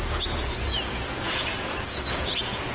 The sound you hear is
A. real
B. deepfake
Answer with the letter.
B